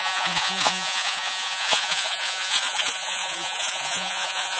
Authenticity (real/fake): fake